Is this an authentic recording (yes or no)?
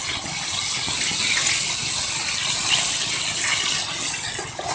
yes